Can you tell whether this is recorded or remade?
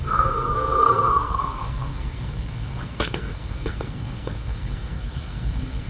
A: remade